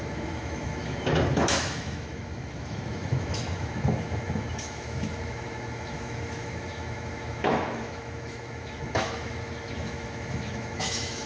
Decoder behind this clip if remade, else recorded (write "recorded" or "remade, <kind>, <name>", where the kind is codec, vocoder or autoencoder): remade, autoencoder, DAC-VAE